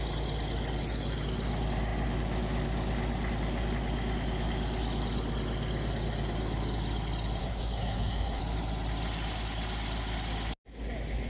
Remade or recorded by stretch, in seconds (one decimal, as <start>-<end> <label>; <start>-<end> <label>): 0.0-7.4 recorded; 7.4-8.4 remade; 8.4-11.3 recorded